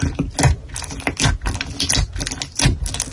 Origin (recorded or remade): recorded